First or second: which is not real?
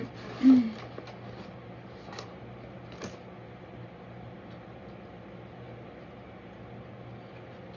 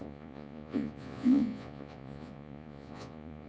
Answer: second